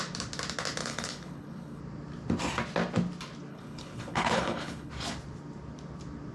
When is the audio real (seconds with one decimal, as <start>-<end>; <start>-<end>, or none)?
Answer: 0.0-0.8; 1.8-3.5; 4.9-6.3